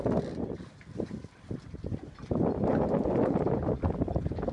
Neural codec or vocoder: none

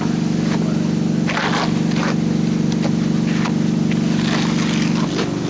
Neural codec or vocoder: none